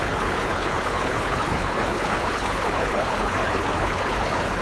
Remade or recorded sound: remade